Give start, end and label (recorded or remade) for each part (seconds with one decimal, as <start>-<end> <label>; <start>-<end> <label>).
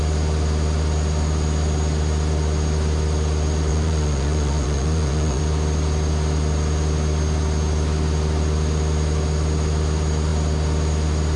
0.0-3.7 recorded; 3.7-5.4 remade; 5.4-11.4 recorded